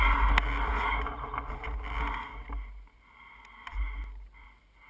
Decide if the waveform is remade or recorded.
recorded